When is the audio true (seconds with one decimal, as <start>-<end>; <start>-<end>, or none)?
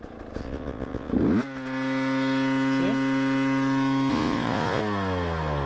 0.0-0.4; 1.1-4.1; 4.8-5.7